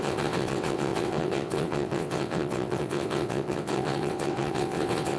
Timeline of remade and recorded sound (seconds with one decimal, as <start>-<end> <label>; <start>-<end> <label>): 0.0-5.2 remade